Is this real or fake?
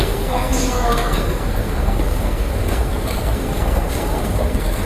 fake